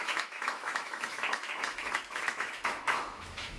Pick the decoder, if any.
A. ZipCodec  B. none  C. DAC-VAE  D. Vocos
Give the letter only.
C